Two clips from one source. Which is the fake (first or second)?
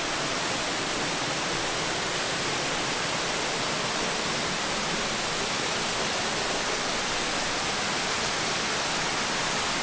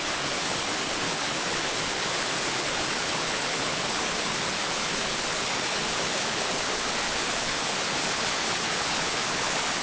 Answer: second